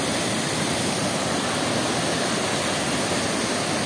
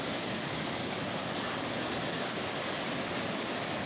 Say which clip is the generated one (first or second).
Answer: second